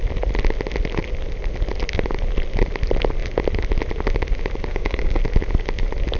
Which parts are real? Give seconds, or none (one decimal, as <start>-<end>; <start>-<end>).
0.0-4.7; 5.2-6.2